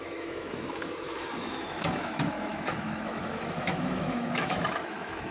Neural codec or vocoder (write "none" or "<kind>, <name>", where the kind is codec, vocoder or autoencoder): autoencoder, DAC-VAE